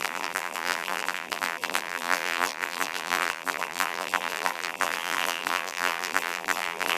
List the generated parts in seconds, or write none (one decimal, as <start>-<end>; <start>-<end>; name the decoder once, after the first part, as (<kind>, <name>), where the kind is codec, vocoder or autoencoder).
0.0-7.0 (vocoder, BigVGAN v2)